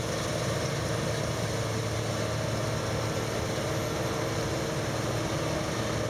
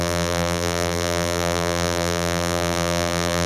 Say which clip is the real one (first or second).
first